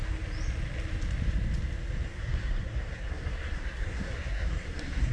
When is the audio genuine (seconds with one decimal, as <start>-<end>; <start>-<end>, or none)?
0.0-2.1